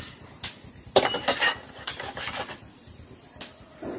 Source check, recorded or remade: remade